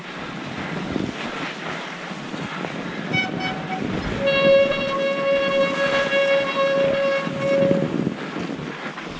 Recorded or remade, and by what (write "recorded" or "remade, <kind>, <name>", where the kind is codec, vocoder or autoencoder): recorded